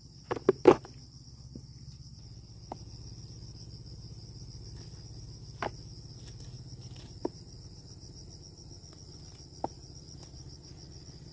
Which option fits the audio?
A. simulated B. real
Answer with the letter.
B